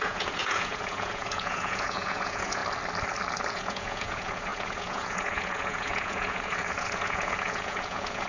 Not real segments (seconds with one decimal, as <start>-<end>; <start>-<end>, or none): 0.0-2.6; 3.5-8.3